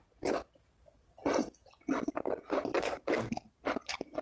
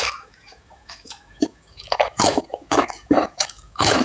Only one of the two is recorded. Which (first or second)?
first